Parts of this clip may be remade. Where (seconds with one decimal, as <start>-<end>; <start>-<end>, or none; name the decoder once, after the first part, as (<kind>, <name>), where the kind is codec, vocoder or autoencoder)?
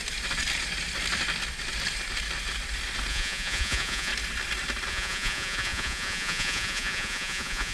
3.1-4.1 (vocoder, Vocos); 4.9-7.7